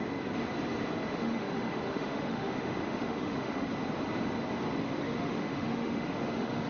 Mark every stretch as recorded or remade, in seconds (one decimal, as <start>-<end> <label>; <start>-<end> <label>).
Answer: 0.0-1.1 recorded; 1.1-3.7 remade; 3.7-4.8 recorded; 4.8-6.7 remade